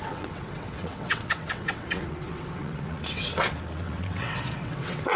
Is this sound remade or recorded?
remade